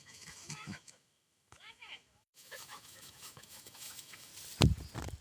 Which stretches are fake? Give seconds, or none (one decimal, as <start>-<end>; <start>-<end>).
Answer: 0.0-4.3